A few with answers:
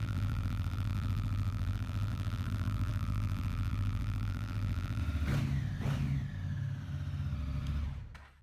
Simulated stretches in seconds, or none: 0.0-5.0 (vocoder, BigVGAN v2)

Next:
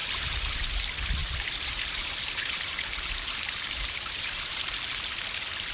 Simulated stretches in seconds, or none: 0.0-0.7 (vocoder, BigVGAN v2); 1.2-4.6